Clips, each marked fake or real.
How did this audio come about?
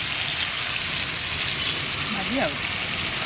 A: real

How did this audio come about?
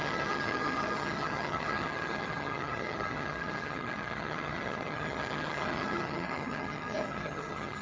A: fake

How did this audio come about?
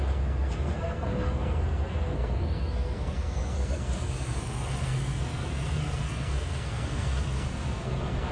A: fake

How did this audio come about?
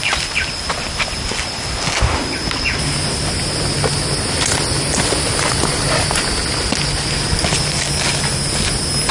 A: real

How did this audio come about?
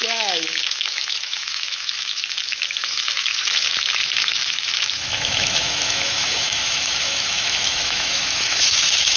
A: fake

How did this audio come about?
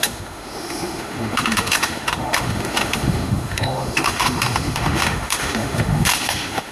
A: fake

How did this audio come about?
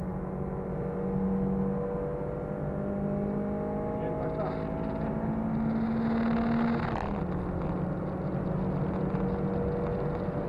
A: real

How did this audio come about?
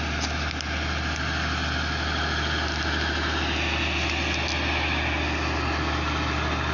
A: real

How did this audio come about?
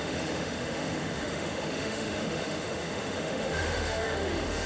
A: fake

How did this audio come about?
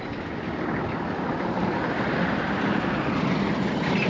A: real